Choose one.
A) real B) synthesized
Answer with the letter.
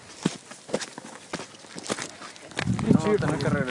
A